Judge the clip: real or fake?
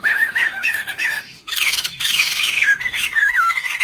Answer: fake